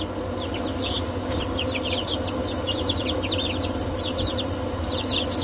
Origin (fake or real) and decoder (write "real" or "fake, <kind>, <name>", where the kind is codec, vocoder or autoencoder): real